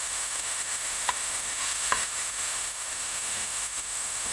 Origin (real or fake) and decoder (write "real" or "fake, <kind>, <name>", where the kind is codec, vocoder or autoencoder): fake, autoencoder, DAC-VAE